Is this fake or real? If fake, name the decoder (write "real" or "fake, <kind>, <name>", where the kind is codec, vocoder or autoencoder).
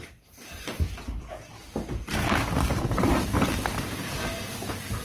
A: real